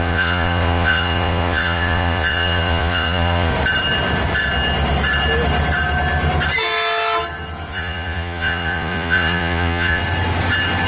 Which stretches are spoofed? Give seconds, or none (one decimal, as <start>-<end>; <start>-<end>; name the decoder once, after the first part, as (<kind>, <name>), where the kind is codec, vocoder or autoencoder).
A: 0.0-3.5 (vocoder, Vocos); 7.7-10.0